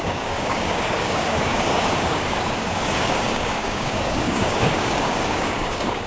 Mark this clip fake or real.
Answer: fake